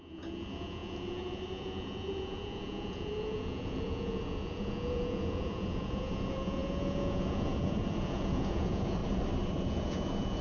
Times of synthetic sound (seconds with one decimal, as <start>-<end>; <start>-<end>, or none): 0.0-9.0; 9.7-10.4